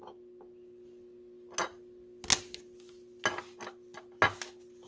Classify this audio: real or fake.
real